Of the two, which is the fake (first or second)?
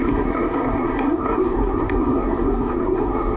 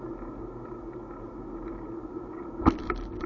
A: first